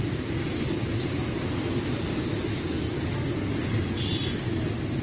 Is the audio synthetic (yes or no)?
no